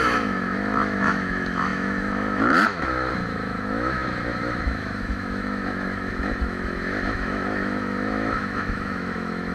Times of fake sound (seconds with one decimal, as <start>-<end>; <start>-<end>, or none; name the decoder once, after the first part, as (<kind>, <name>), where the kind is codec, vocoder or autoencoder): 0.0-9.5 (autoencoder, DAC-VAE)